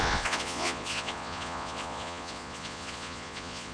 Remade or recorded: remade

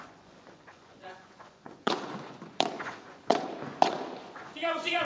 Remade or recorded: remade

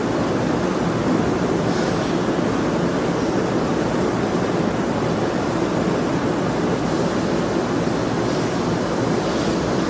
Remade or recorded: recorded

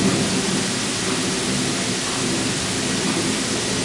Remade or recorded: recorded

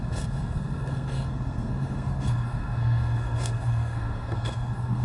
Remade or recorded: remade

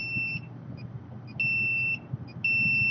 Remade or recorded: recorded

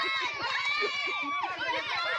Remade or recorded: recorded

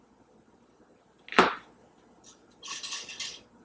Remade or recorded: recorded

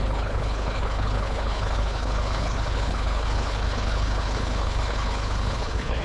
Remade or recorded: remade